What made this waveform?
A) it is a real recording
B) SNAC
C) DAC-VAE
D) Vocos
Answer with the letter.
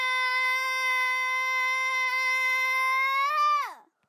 A